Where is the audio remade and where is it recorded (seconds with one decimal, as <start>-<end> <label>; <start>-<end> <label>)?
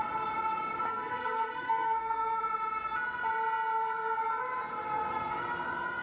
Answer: 0.0-0.9 recorded; 0.9-2.4 remade; 2.4-6.0 recorded